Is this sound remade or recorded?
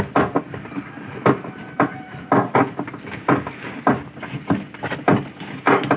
recorded